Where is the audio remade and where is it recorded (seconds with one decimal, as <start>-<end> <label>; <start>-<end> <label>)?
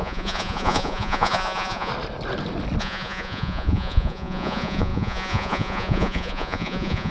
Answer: 0.0-1.9 remade; 1.9-2.8 recorded; 2.8-7.1 remade